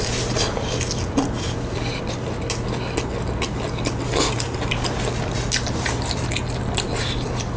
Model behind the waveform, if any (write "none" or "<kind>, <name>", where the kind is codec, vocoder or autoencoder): none